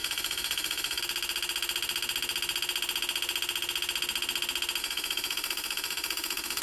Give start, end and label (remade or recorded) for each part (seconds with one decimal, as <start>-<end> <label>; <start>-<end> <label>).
0.0-1.0 remade; 1.0-4.8 recorded; 4.8-6.6 remade